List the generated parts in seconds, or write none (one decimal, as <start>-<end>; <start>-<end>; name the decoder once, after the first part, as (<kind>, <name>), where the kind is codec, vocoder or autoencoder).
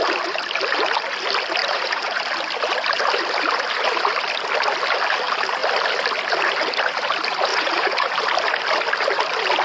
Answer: 1.6-2.2 (vocoder, Vocos); 7.5-8.1